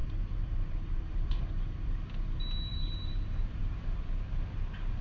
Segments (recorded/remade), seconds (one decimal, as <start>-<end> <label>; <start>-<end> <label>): 0.0-1.4 remade; 1.4-2.7 recorded; 2.7-3.6 remade; 3.6-5.0 recorded